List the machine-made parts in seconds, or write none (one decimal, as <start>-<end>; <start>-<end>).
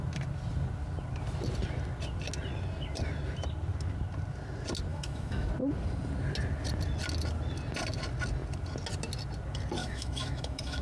4.9-5.5; 9.8-10.8